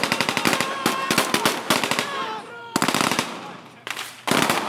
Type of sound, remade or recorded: recorded